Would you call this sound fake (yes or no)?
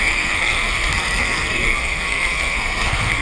yes